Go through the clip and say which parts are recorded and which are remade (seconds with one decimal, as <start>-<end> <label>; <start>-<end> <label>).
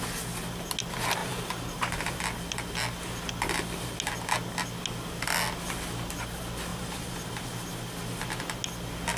0.0-1.2 recorded; 1.2-2.2 remade; 2.2-6.7 recorded; 6.7-7.4 remade; 7.4-9.2 recorded